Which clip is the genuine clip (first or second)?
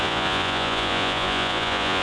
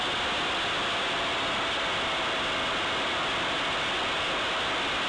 second